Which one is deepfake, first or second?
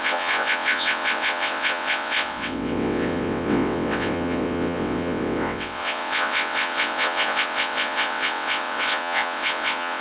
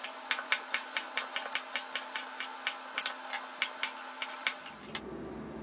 first